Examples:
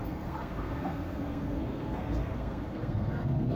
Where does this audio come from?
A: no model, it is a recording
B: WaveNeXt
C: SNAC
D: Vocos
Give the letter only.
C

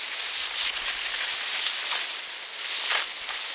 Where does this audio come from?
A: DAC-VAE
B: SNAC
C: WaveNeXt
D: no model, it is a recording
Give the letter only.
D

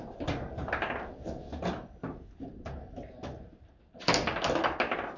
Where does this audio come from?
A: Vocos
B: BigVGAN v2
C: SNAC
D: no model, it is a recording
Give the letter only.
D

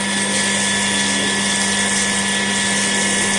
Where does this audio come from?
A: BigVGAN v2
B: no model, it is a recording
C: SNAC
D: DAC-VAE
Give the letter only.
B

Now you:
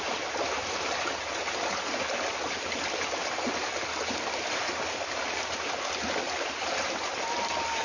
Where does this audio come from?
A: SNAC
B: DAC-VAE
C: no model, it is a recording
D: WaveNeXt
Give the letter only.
C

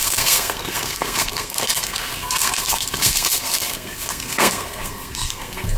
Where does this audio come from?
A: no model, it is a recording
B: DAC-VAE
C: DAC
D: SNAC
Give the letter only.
D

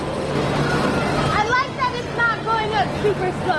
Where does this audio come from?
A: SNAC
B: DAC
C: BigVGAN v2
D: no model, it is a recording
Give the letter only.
D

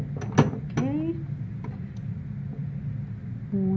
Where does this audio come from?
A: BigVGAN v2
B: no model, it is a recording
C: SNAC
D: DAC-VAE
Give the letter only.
B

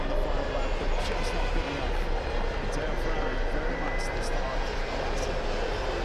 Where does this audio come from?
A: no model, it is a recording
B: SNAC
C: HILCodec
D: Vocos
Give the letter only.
A